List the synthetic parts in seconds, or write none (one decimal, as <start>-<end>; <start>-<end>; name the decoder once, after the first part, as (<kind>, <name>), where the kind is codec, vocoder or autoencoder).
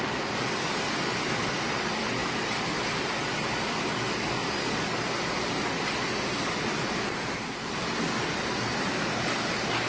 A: none